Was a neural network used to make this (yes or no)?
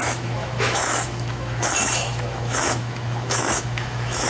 yes